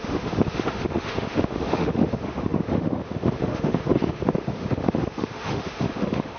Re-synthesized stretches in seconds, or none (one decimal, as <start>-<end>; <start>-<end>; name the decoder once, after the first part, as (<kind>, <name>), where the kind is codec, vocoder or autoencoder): 0.0-6.4 (autoencoder, DAC-VAE)